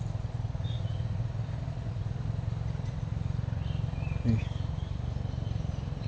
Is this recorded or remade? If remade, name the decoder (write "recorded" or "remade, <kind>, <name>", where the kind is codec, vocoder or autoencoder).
recorded